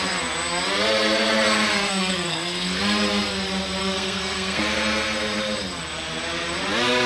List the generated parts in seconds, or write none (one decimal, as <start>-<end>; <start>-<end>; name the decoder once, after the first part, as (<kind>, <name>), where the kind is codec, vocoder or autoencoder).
1.7-2.8 (codec, SNAC); 3.8-4.6